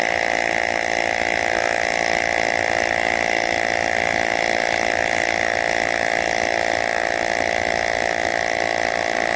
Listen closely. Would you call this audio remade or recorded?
recorded